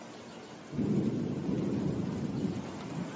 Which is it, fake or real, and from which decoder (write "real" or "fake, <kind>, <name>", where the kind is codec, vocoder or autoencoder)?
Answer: real